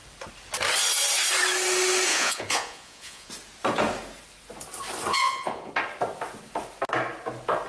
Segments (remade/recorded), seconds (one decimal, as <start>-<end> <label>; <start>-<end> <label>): 0.0-2.1 recorded; 2.1-3.3 remade; 3.3-5.1 recorded; 5.1-5.7 remade; 5.7-7.7 recorded